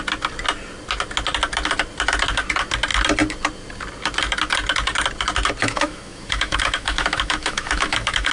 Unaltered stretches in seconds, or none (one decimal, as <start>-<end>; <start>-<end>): 0.0-5.6

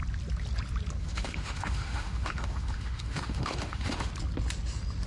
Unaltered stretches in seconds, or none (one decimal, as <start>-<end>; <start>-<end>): 0.0-1.0; 4.1-5.1

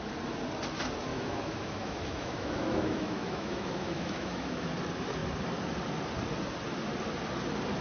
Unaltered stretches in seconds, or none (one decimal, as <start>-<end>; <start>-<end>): 0.0-1.1; 4.7-7.8

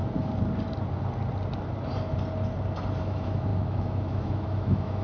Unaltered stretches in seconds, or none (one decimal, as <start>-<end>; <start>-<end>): 0.0-3.0